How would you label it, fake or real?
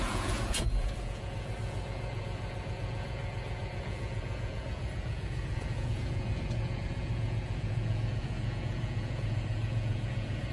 fake